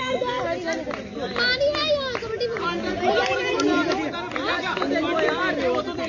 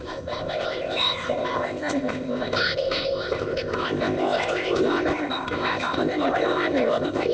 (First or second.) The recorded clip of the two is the first